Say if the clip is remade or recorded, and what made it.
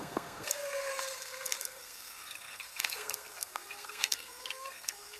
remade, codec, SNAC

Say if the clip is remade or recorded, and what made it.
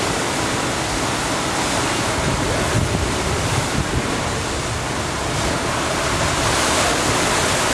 recorded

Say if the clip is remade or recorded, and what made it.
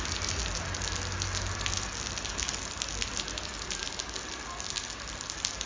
recorded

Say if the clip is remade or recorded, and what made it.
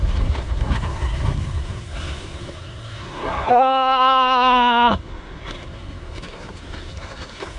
remade, codec, SNAC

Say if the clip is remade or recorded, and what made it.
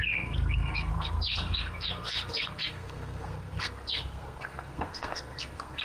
remade, codec, SNAC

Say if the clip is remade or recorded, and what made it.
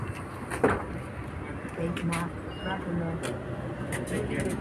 recorded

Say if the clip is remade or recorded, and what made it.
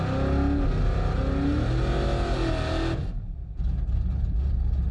recorded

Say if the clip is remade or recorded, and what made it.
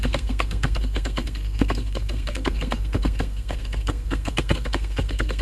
remade, codec, SNAC